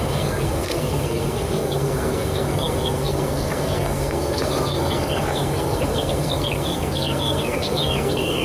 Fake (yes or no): yes